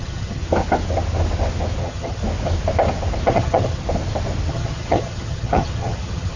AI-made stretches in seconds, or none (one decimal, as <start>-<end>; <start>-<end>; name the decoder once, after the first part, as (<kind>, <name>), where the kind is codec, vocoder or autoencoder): 0.0-0.4 (vocoder, HiFi-GAN); 1.8-2.2; 3.3-3.8; 4.5-6.4